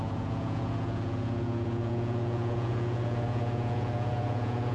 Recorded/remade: remade